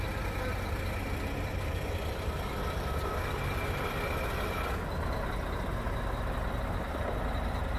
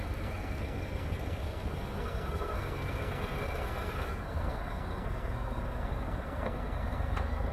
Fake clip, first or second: second